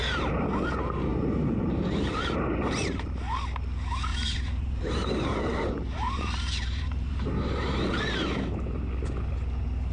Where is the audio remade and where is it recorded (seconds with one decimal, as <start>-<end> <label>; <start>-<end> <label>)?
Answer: 0.0-1.1 recorded; 1.1-2.2 remade; 2.2-4.1 recorded; 4.1-7.7 remade; 7.7-9.9 recorded

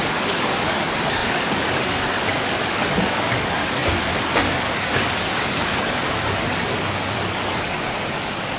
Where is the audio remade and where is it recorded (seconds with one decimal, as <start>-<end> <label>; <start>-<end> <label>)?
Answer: 0.0-8.6 remade

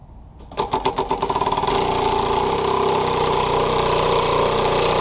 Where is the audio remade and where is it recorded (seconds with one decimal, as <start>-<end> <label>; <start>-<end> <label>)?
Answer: 0.0-5.0 recorded

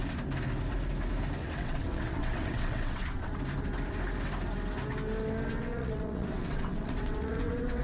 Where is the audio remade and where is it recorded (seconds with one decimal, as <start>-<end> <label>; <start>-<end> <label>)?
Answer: 0.0-1.4 recorded; 1.4-3.4 remade; 3.4-5.5 recorded; 5.5-7.8 remade

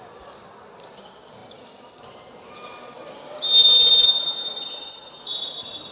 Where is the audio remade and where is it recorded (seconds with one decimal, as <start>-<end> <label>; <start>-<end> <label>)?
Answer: 0.0-5.9 recorded

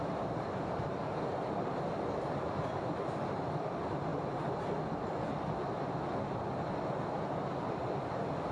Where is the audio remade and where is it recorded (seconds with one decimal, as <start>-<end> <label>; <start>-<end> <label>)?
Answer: 0.0-8.5 recorded

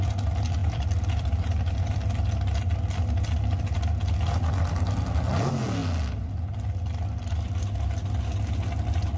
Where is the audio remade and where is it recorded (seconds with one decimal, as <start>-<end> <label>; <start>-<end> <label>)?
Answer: 0.0-0.6 recorded; 0.6-2.3 remade; 2.3-9.2 recorded

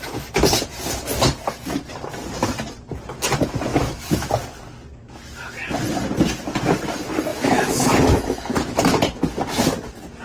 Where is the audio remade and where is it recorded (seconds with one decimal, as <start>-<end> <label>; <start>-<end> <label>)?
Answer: 0.0-3.7 recorded; 3.7-4.3 remade; 4.3-5.0 recorded; 5.0-5.8 remade; 5.8-7.3 recorded; 7.3-8.7 remade; 8.7-10.2 recorded